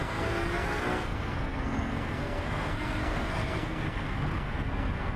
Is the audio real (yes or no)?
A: no